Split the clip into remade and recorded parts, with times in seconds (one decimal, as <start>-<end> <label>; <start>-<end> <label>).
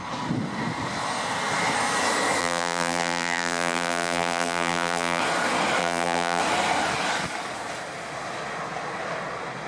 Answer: 0.0-2.4 recorded; 2.4-5.2 remade; 5.2-5.8 recorded; 5.8-6.4 remade; 6.4-9.7 recorded